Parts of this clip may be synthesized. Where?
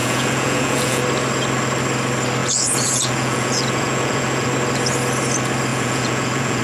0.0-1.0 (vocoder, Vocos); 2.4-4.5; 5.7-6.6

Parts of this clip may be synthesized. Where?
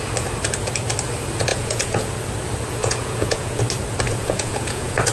1.5-2.0 (vocoder, Vocos); 2.8-3.6; 4.1-5.1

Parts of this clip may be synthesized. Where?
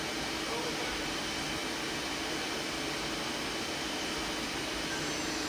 none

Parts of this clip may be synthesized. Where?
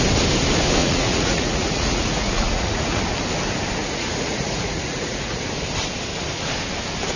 0.8-3.0 (vocoder, Vocos); 3.8-5.4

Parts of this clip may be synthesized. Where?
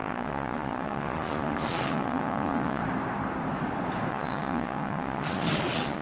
0.0-2.8 (vocoder, Vocos); 4.1-6.0